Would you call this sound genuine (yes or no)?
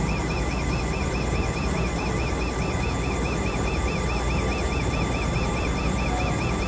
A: yes